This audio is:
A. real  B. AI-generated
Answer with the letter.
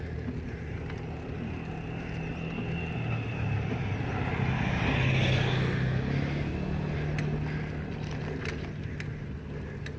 A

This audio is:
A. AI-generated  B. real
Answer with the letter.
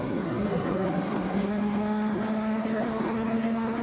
A